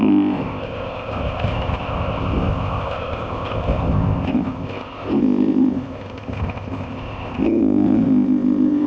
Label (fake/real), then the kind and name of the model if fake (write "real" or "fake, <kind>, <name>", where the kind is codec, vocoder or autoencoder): fake, codec, ZipCodec